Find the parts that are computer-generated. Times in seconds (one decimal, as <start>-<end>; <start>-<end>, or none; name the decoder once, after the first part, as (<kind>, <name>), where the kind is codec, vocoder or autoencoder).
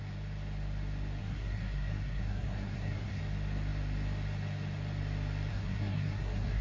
1.2-3.2 (codec, SNAC); 5.5-6.6